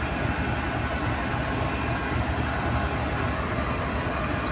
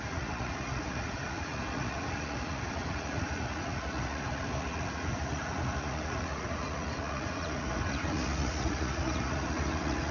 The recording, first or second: first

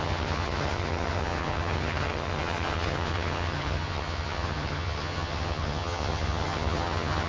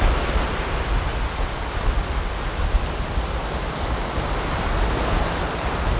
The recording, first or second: second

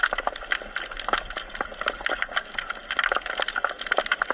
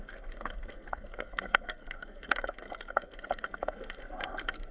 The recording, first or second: first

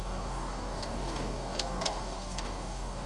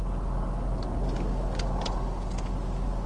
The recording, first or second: second